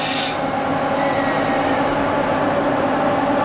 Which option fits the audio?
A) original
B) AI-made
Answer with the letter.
A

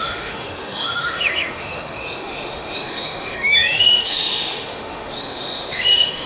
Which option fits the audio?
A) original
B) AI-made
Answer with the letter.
B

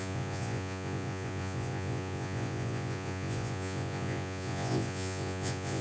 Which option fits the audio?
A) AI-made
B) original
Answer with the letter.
A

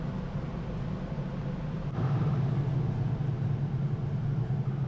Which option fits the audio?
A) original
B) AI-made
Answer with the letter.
A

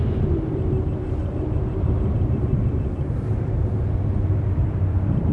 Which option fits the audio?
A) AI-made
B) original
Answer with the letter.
A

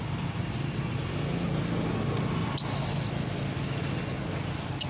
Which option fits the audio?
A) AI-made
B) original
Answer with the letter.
B